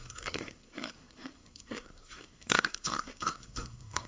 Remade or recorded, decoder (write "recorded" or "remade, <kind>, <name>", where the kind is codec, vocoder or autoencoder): remade, codec, SNAC